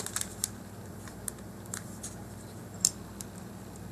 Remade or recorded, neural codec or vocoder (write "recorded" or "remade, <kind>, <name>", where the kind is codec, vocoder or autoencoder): remade, vocoder, BigVGAN v2